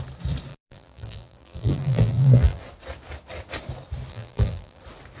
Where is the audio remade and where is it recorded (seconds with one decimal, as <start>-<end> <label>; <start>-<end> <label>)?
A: 0.0-0.5 recorded; 0.5-2.6 remade; 2.6-4.1 recorded; 4.1-4.8 remade; 4.8-5.2 recorded